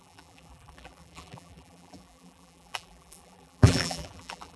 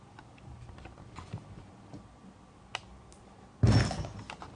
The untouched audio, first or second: second